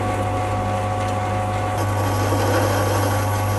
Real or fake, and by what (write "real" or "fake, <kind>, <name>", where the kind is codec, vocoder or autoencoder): real